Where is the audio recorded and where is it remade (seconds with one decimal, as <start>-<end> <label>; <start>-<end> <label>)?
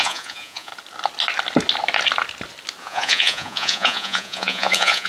0.0-0.7 remade; 0.7-2.8 recorded; 2.8-5.1 remade